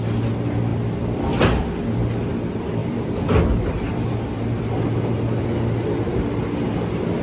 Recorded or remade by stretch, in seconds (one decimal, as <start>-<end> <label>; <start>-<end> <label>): 0.0-0.7 recorded; 0.7-1.2 remade; 1.2-2.8 recorded; 2.8-4.4 remade; 4.4-4.9 recorded; 4.9-5.6 remade; 5.6-7.2 recorded